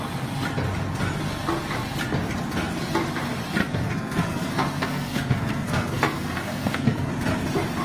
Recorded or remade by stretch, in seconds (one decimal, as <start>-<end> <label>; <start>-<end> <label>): 0.0-3.6 recorded; 3.6-7.1 remade; 7.1-7.8 recorded

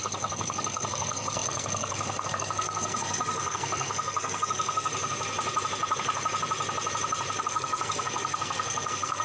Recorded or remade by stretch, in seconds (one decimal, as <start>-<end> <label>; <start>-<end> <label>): 0.0-4.9 remade; 4.9-7.4 recorded; 7.4-9.2 remade